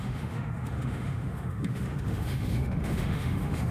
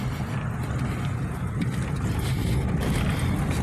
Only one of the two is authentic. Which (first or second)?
second